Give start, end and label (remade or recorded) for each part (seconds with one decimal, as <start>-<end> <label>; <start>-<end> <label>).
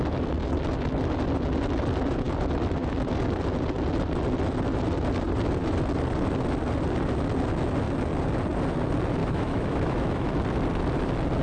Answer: 0.0-9.2 recorded; 9.2-10.3 remade; 10.3-11.4 recorded